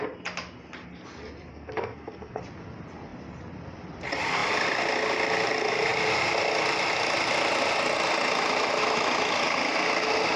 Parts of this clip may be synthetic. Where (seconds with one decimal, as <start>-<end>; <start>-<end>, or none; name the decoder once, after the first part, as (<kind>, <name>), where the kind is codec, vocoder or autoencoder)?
1.5-2.4 (codec, SNAC)